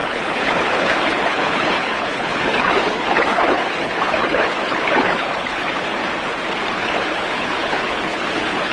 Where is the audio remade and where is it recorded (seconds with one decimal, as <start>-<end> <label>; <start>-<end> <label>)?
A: 0.0-6.0 remade; 6.0-6.7 recorded; 6.7-8.7 remade